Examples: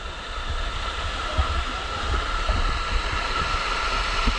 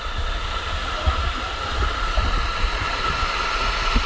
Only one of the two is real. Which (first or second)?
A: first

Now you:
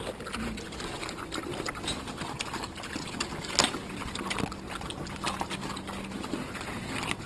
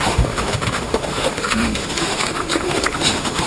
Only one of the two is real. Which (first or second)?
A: first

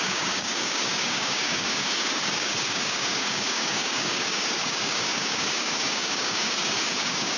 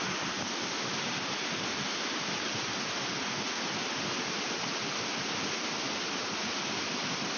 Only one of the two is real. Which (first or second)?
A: second